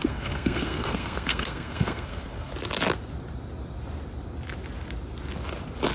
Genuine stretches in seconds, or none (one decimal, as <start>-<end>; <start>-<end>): 2.5-5.9